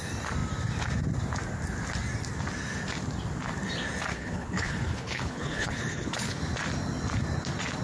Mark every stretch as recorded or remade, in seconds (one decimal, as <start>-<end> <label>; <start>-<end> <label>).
0.0-4.1 recorded; 4.1-6.4 remade; 6.4-7.8 recorded